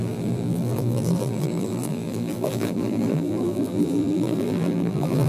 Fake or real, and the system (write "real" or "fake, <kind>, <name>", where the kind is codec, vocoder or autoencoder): fake, vocoder, BigVGAN v2